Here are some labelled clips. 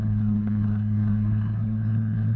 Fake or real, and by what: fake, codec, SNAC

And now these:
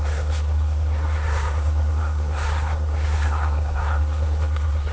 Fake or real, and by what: fake, codec, SNAC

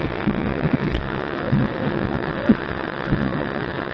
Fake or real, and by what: fake, vocoder, WaveNeXt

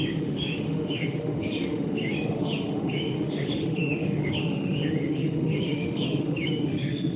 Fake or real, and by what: fake, autoencoder, DAC-VAE